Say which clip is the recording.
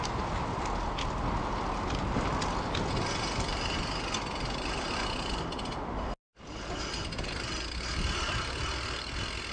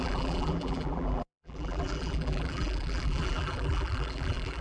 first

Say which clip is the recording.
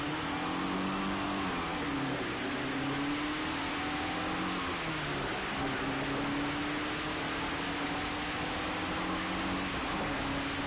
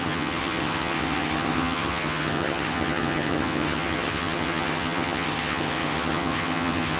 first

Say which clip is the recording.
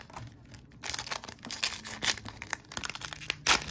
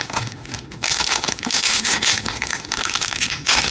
first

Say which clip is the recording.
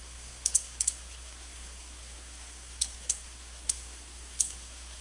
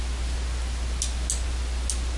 second